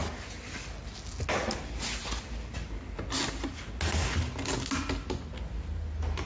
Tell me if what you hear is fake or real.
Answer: real